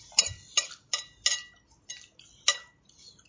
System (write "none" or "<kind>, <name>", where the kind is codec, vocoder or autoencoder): none